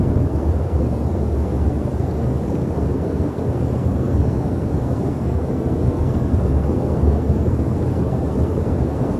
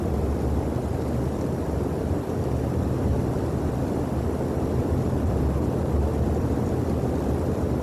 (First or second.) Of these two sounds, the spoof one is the first